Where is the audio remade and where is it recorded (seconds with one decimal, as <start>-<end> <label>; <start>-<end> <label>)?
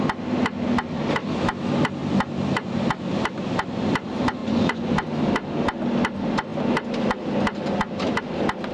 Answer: 0.0-4.4 recorded; 4.4-4.9 remade; 4.9-8.7 recorded